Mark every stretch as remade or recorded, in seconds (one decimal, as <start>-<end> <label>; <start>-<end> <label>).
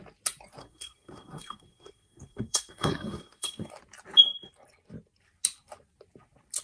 0.0-0.6 recorded; 0.6-3.7 remade; 3.7-6.6 recorded